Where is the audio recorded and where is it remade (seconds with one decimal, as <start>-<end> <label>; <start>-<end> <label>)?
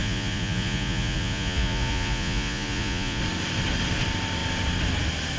0.0-3.2 remade; 3.2-5.4 recorded